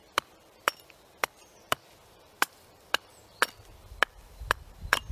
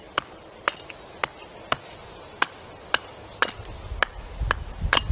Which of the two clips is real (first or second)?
second